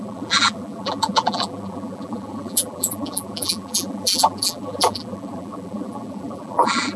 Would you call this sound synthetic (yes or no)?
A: yes